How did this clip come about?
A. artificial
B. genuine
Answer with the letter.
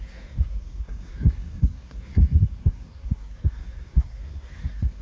A